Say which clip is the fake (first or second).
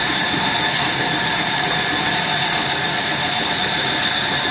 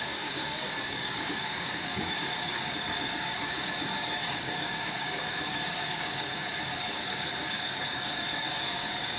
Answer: second